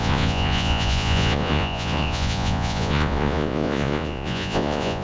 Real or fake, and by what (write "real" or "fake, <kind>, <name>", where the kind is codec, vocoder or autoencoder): fake, vocoder, Vocos